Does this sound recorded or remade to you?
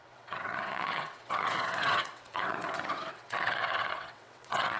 remade